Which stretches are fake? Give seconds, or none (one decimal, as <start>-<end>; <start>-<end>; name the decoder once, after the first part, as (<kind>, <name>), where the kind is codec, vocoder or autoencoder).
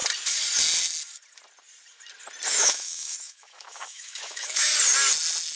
2.5-4.7 (autoencoder, DAC-VAE)